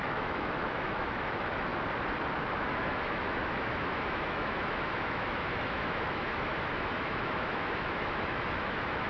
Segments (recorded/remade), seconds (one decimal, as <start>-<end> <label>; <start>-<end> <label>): 0.0-1.7 remade; 1.7-2.6 recorded; 2.6-9.1 remade